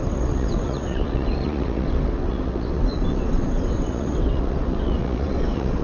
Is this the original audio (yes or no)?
no